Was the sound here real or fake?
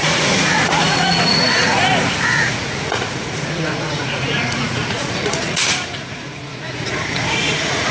fake